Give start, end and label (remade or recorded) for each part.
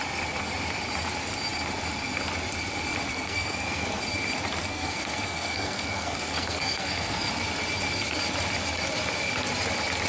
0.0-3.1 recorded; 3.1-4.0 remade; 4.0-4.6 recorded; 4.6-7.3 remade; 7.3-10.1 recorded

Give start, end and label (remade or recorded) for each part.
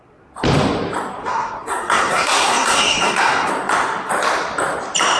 0.0-1.2 recorded; 1.2-3.5 remade; 3.5-5.2 recorded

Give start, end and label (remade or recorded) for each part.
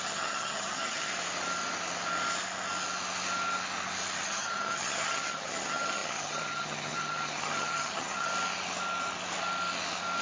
0.0-1.1 remade; 1.1-4.2 recorded; 4.2-8.3 remade; 8.3-10.2 recorded